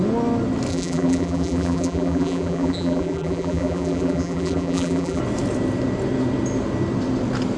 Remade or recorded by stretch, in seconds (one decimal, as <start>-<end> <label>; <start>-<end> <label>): 0.0-0.7 recorded; 0.7-5.2 remade; 5.2-7.6 recorded